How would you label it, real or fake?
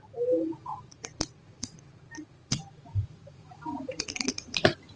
fake